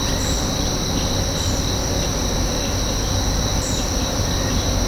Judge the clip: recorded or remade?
recorded